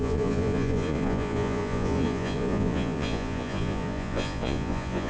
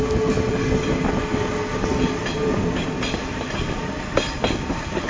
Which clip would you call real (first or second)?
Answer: second